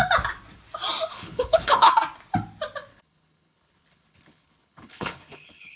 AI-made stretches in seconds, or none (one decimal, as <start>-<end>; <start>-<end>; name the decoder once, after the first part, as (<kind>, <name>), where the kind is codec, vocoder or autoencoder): 1.1-1.9 (codec, HILCodec); 2.9-5.8